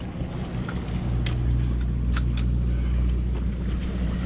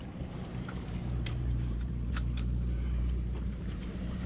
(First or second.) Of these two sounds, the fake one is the second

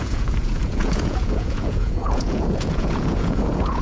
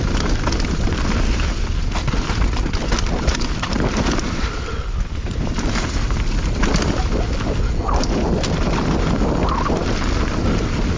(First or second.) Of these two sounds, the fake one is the first